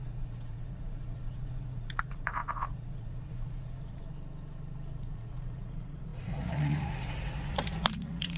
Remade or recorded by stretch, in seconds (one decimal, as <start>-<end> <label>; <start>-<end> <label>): 0.0-4.0 remade; 4.0-4.9 recorded; 4.9-8.4 remade